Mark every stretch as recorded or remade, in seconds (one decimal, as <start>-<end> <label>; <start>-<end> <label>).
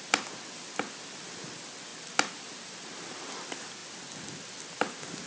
0.0-1.9 recorded; 1.9-3.3 remade; 3.3-5.3 recorded